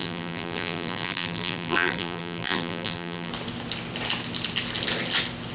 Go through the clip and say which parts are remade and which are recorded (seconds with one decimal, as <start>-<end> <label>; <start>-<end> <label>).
0.0-3.3 remade; 3.3-5.5 recorded